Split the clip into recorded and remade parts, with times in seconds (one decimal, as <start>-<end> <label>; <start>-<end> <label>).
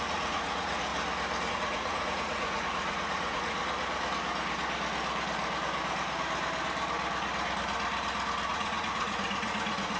0.0-0.9 remade; 0.9-1.5 recorded; 1.5-3.6 remade; 3.6-8.5 recorded; 8.5-10.0 remade